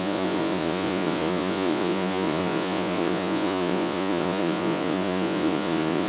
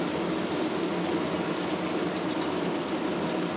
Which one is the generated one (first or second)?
first